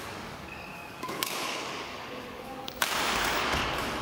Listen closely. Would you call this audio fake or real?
fake